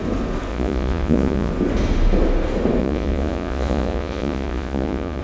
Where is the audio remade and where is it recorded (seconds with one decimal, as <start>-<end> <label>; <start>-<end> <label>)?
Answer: 0.0-0.5 recorded; 0.5-1.5 remade; 1.5-2.8 recorded; 2.8-5.2 remade